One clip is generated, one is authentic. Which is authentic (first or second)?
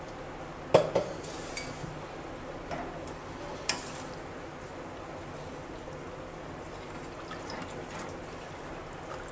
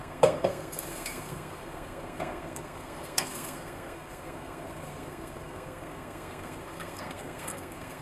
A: first